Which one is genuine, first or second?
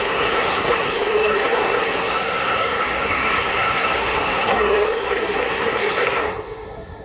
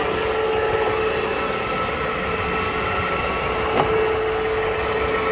second